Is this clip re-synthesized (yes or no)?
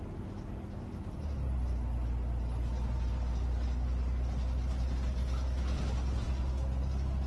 no